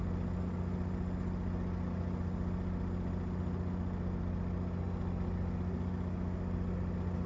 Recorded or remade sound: recorded